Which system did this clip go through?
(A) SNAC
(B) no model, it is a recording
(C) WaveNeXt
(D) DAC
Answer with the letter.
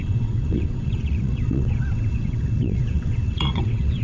C